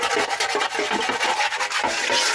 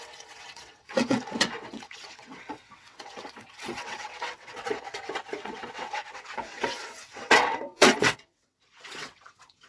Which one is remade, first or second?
second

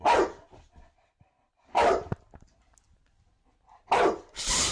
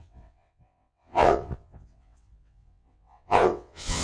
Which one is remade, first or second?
second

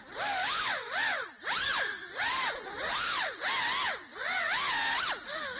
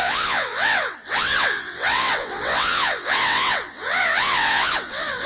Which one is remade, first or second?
second